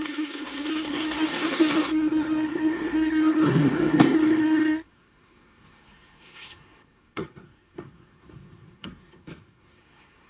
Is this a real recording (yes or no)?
no